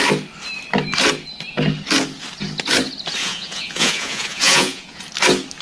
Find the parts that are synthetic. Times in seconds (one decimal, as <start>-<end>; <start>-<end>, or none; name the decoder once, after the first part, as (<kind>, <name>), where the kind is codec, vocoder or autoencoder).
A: 3.2-5.0 (vocoder, Vocos)